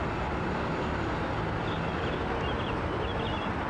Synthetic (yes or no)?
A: no